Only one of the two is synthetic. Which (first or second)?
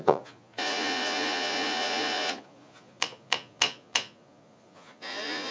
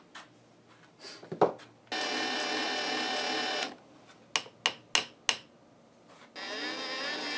first